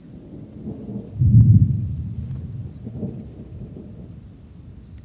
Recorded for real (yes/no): yes